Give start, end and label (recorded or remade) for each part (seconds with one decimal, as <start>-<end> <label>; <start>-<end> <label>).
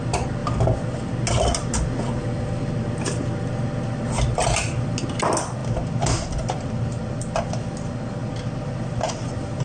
0.0-9.6 recorded